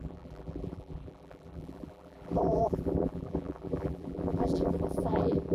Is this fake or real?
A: fake